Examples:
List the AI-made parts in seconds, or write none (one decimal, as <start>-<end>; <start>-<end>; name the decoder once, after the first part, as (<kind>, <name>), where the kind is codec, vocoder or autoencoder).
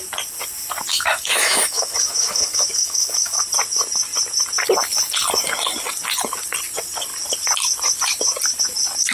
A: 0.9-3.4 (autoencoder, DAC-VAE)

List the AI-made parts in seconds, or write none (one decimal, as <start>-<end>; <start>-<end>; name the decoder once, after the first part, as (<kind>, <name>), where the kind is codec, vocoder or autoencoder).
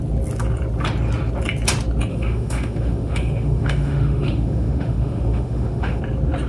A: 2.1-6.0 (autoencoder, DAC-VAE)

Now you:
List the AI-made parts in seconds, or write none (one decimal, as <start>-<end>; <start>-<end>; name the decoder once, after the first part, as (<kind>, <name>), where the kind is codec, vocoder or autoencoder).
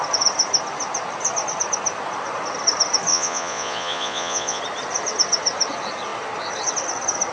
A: 3.1-4.6 (vocoder, Vocos)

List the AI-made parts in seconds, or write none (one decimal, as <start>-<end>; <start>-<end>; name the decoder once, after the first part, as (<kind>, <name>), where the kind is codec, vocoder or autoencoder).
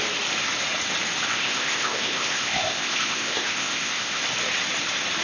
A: 1.3-4.2 (codec, ZipCodec)